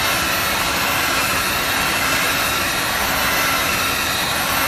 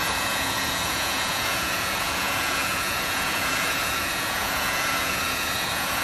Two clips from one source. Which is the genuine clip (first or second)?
first